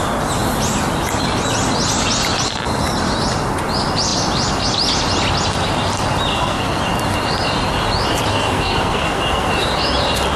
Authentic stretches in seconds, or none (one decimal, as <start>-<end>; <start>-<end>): 0.0-6.3; 6.8-8.3; 9.5-10.4